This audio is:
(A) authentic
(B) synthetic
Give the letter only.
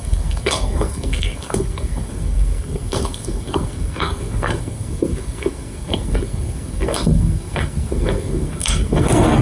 B